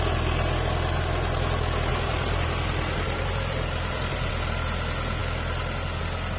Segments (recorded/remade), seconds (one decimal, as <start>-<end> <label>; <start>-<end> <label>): 0.0-1.9 recorded; 1.9-4.3 remade; 4.3-6.4 recorded